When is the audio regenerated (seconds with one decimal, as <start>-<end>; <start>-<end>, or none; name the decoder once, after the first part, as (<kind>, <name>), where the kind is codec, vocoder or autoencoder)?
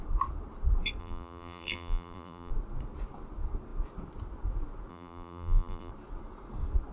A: 1.0-2.5 (vocoder, BigVGAN v2); 4.9-5.9